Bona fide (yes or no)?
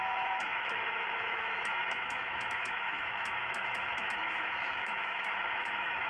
no